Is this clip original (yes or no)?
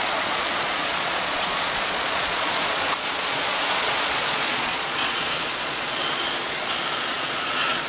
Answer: no